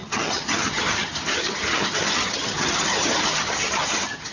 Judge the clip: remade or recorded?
remade